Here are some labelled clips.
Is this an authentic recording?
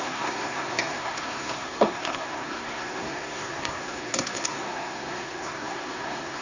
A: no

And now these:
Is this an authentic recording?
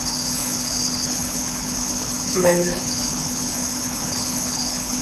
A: no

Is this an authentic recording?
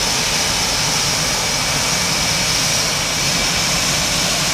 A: yes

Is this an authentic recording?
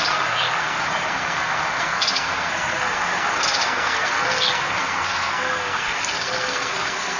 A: no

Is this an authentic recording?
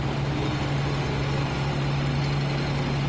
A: yes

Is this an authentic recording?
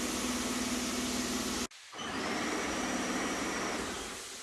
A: yes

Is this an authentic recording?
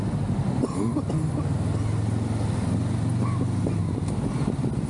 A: yes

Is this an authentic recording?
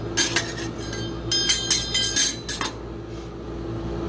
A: yes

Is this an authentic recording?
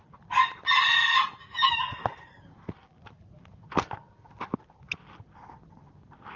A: yes